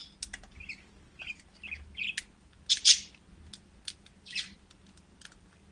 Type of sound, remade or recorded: recorded